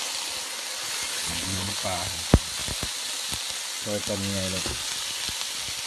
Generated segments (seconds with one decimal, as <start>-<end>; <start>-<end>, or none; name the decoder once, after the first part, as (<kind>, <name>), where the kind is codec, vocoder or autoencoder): 1.1-1.7 (codec, HILCodec)